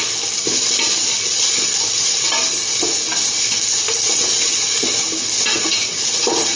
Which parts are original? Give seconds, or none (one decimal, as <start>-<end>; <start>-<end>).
0.0-5.5